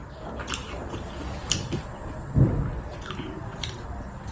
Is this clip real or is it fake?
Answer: real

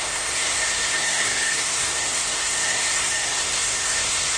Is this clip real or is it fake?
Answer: fake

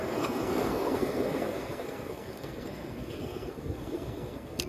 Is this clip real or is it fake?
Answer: fake